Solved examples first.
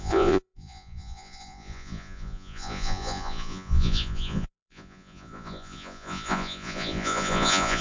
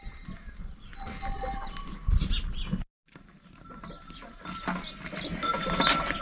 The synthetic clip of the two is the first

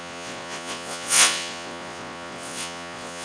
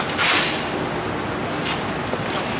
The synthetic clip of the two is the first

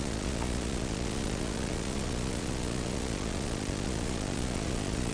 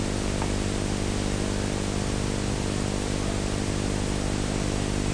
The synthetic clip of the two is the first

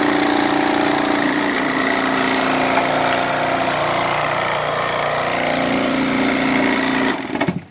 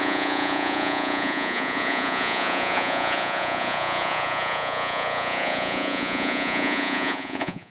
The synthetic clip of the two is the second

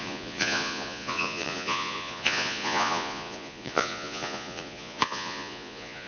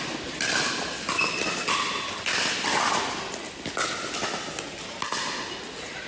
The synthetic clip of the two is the first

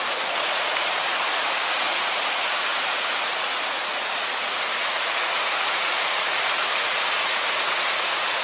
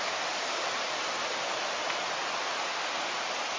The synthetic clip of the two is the first